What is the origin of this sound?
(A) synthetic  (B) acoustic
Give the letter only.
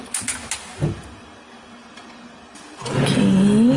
B